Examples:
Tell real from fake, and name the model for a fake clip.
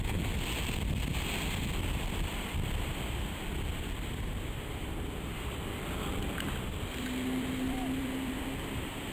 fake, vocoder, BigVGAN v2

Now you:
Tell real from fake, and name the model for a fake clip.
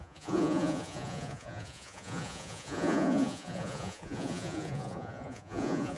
fake, vocoder, Vocos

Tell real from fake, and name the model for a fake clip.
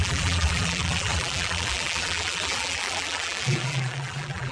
fake, vocoder, BigVGAN v2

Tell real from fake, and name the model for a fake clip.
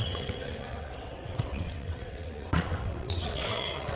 fake, vocoder, WaveNeXt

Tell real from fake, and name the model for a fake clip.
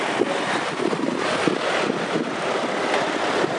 real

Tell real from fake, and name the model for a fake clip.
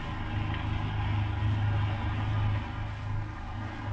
real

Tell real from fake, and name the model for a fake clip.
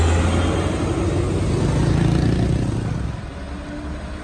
real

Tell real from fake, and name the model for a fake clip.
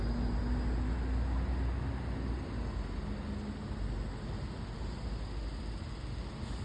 real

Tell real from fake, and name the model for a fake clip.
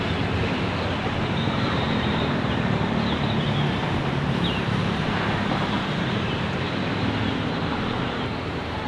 fake, vocoder, BigVGAN v2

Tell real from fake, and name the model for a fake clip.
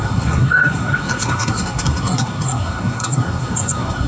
fake, codec, SNAC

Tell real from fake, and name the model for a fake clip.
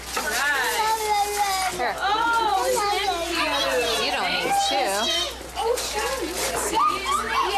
real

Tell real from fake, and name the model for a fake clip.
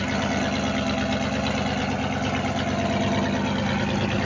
real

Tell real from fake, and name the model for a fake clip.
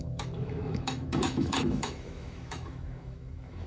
fake, autoencoder, DAC-VAE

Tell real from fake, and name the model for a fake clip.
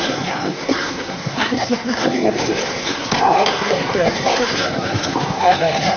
fake, codec, SNAC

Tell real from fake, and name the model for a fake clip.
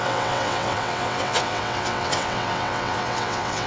fake, vocoder, WaveNeXt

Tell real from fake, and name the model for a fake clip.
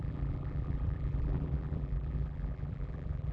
fake, vocoder, BigVGAN v2